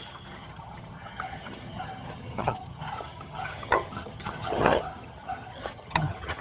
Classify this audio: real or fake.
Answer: fake